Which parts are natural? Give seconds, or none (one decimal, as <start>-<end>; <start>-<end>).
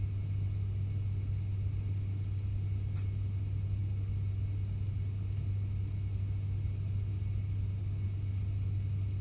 0.0-9.2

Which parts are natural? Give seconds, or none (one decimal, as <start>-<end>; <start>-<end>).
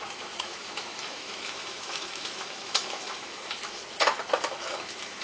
3.8-4.3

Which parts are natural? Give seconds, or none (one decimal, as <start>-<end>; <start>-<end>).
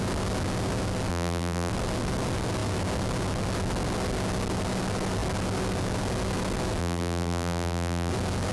0.0-1.1; 1.7-6.8; 8.1-8.5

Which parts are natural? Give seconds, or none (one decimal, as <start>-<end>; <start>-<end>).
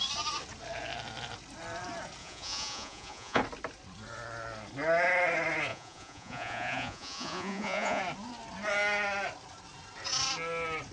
0.0-2.2; 3.4-5.7; 8.0-10.9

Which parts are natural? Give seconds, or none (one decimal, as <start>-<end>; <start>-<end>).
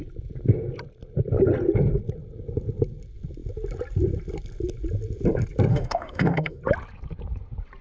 0.0-5.7; 6.6-7.8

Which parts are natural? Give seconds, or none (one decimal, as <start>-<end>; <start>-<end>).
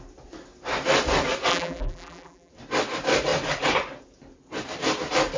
0.0-1.5; 2.5-5.4